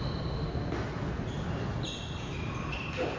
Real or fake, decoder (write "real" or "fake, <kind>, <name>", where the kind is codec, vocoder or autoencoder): real